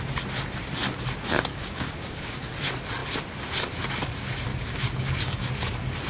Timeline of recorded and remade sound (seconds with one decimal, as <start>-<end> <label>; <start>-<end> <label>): 0.0-1.5 recorded; 1.5-2.4 remade; 2.4-4.5 recorded; 4.5-5.5 remade; 5.5-6.1 recorded